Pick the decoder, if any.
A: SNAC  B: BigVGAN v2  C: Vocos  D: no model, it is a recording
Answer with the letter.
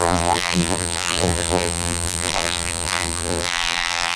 B